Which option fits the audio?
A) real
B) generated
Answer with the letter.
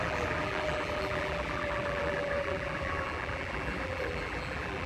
B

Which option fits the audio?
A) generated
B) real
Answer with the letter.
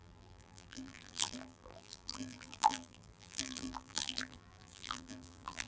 A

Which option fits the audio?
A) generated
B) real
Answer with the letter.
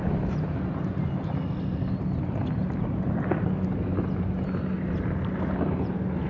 B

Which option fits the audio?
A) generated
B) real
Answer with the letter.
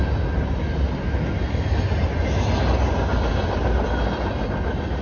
B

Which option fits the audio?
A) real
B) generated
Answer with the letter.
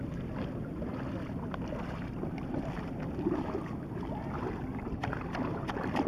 A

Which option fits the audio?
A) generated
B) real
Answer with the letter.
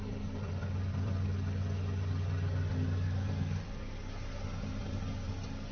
B